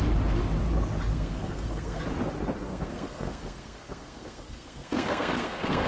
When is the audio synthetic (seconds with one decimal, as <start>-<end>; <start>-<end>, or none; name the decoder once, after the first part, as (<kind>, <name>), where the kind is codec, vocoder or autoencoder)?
1.1-2.0 (codec, SNAC); 2.7-5.9